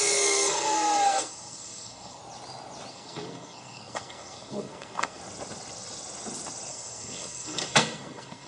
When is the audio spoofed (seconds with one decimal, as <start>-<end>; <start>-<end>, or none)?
0.0-2.2; 2.9-5.2; 6.7-8.5